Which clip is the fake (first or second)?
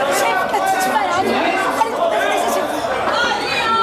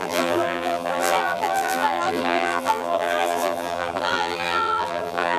second